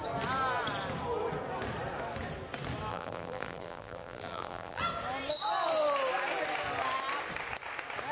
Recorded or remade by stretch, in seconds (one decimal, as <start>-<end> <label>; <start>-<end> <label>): 0.0-2.9 recorded; 2.9-4.8 remade; 4.8-8.1 recorded